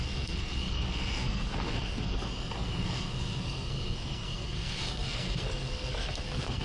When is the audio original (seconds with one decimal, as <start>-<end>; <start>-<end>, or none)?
none